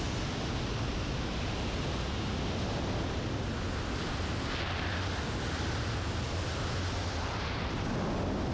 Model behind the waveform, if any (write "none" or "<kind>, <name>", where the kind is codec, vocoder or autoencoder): none